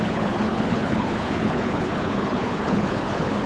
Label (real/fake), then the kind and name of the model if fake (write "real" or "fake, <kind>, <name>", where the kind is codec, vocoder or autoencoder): fake, codec, HILCodec